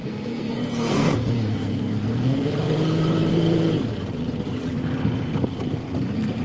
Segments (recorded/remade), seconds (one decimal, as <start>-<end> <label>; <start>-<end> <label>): 0.0-2.5 remade; 2.5-6.4 recorded